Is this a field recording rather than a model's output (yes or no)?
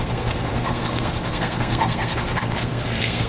no